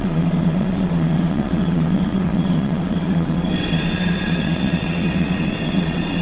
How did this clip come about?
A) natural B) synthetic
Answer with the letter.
B